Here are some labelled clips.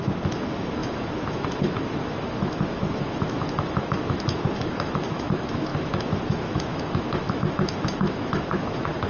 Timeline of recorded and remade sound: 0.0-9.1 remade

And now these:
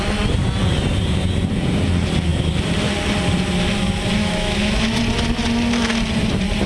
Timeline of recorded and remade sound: 0.0-4.2 recorded; 4.2-5.0 remade; 5.0-6.7 recorded